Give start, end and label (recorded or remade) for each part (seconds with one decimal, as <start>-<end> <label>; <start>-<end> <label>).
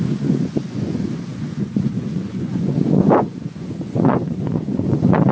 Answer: 0.0-5.3 remade